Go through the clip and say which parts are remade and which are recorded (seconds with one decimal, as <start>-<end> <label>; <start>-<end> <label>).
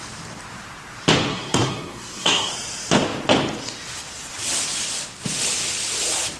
0.0-1.3 recorded; 1.3-2.5 remade; 2.5-6.4 recorded